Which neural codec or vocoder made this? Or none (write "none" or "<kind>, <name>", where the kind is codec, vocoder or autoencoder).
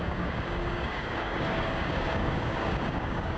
codec, DAC